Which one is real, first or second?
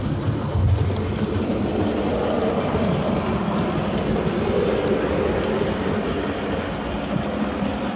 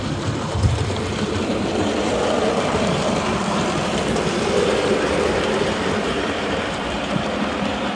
first